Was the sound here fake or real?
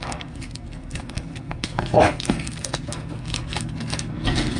fake